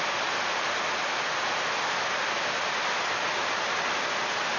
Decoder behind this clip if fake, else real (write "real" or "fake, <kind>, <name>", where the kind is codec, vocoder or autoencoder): real